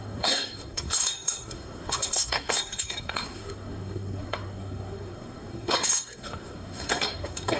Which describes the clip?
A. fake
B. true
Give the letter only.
A